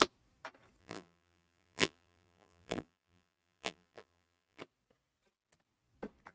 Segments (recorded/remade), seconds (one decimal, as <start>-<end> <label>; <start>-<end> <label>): 0.0-0.8 recorded; 0.8-4.6 remade; 4.6-6.3 recorded